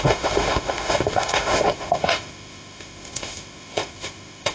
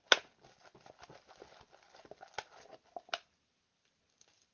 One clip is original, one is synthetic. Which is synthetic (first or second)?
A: first